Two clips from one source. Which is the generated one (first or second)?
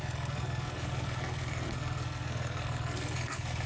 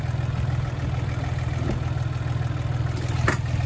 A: first